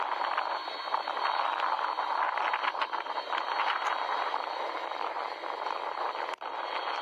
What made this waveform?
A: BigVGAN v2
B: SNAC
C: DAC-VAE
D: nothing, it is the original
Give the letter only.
D